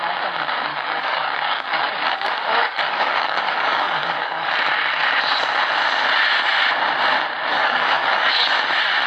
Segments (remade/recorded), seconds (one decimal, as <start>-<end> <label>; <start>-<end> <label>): 0.0-0.7 recorded; 0.7-4.5 remade; 4.5-7.5 recorded; 7.5-8.5 remade; 8.5-9.1 recorded